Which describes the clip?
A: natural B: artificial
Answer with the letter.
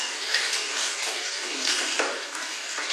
B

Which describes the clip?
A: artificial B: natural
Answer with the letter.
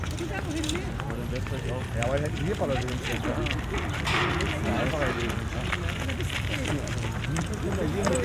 B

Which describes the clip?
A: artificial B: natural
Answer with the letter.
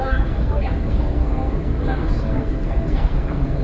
A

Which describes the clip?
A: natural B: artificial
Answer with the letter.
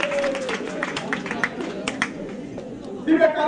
B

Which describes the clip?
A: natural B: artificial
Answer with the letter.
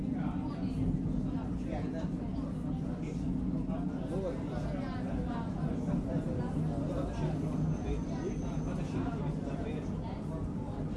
A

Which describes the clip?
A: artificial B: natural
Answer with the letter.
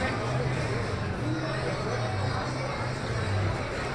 B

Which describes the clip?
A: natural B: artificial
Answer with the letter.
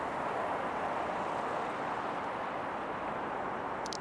A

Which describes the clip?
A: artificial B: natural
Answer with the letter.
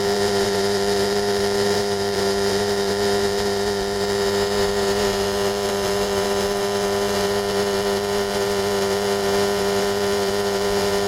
A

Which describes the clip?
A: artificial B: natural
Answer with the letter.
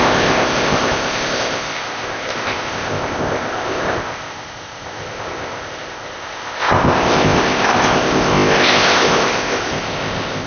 A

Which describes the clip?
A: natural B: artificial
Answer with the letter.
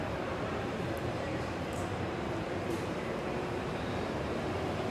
B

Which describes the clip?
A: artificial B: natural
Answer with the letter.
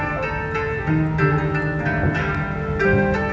B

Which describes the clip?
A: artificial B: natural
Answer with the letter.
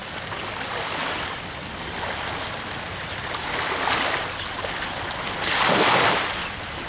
B